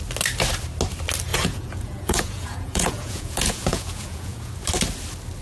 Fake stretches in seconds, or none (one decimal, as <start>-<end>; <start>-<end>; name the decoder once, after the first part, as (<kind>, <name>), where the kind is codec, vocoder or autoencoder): 1.3-4.5 (vocoder, Vocos)